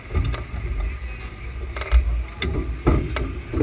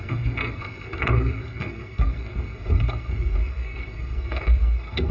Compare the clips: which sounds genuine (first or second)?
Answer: first